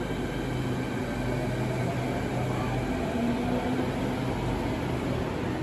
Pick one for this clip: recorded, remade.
recorded